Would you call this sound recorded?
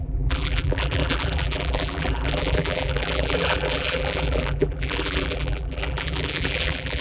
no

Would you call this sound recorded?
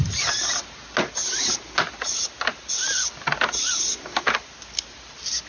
yes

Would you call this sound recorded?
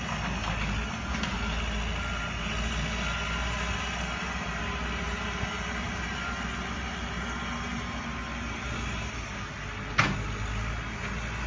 yes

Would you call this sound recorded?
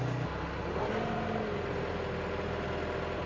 yes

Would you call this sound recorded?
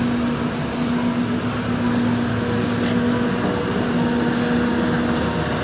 yes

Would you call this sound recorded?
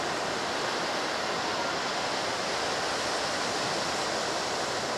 yes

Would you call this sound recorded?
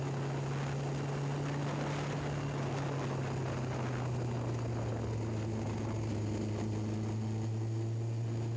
yes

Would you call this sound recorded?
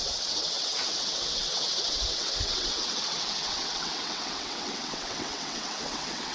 no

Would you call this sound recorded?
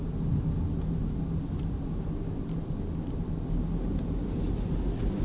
yes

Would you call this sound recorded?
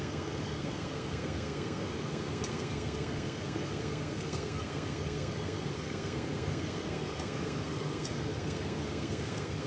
no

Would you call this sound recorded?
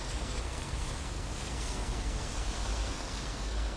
no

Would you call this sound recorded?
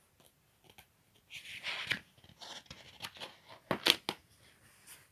yes